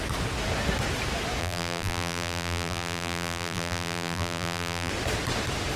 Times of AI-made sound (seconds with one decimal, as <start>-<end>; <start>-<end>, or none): 1.4-4.9

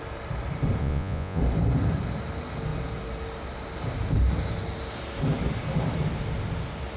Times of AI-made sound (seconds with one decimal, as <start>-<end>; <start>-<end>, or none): 0.8-1.4

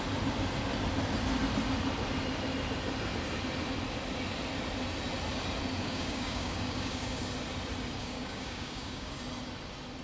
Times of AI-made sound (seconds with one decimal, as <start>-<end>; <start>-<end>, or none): 5.8-7.2; 8.0-9.2

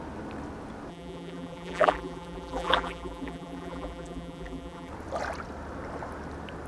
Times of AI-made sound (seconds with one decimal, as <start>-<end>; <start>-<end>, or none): 0.9-4.9

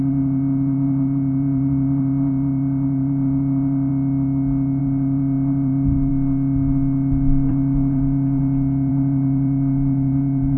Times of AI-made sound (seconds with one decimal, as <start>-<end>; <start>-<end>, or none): 0.0-3.9; 4.8-6.1; 7.5-8.4; 8.9-10.6